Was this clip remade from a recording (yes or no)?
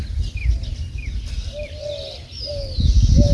no